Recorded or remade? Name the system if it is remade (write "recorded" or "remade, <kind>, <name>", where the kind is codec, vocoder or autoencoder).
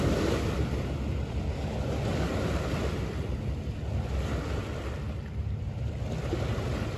recorded